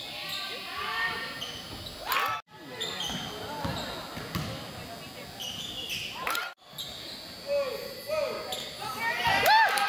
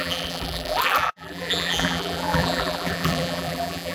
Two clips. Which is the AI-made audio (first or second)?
second